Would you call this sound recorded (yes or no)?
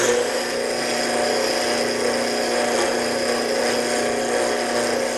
yes